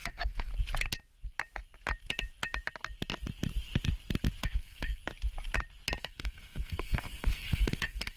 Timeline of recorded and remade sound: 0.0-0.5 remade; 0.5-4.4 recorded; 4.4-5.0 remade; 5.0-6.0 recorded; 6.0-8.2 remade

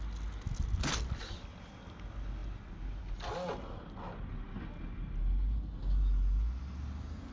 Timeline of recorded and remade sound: 0.0-7.3 recorded

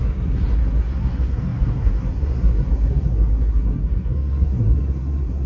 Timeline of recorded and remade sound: 0.0-5.5 remade

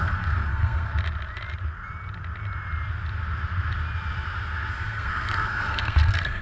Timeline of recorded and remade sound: 0.0-0.9 remade; 0.9-4.7 recorded; 4.7-6.4 remade